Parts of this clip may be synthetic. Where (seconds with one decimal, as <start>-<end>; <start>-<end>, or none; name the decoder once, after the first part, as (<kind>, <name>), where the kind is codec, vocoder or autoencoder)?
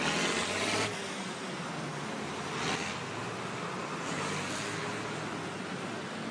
none